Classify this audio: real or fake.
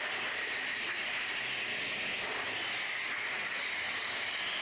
real